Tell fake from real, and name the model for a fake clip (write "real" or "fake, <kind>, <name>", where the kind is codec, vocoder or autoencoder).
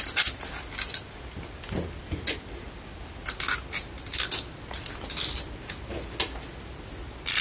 real